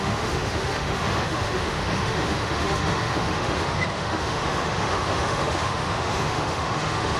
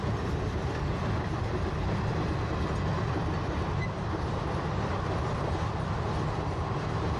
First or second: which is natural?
second